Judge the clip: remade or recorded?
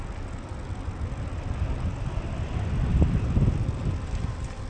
recorded